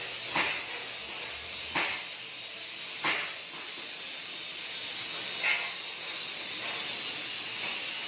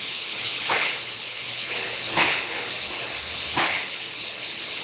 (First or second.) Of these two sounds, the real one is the first